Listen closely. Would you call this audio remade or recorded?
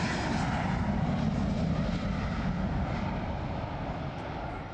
recorded